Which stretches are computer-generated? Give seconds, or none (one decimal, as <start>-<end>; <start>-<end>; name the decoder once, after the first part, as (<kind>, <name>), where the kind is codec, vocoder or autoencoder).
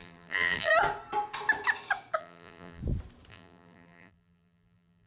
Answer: 0.0-0.7 (vocoder, BigVGAN v2); 2.2-2.8; 3.3-5.1